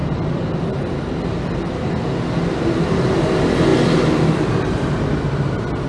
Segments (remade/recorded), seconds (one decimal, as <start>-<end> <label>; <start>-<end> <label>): 0.0-5.9 recorded